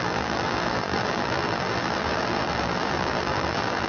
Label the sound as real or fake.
fake